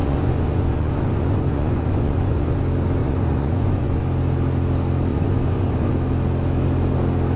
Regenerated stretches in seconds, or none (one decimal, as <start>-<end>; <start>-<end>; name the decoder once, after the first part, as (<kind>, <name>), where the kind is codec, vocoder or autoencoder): 0.0-2.6 (vocoder, Vocos); 3.0-4.0; 5.1-5.9